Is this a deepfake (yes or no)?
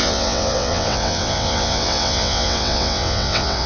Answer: yes